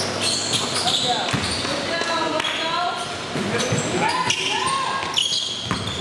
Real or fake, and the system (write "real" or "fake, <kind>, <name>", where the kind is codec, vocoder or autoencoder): real